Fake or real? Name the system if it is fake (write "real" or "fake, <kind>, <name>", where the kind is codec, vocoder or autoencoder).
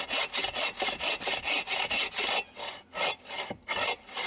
real